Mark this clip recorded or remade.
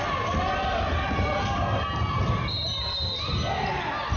recorded